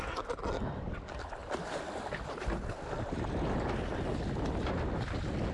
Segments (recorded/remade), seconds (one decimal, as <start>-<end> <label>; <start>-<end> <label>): 0.0-5.5 recorded